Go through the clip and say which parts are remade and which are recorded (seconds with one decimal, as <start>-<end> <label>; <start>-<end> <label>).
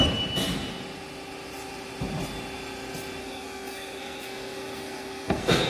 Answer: 0.0-3.2 recorded; 3.2-5.7 remade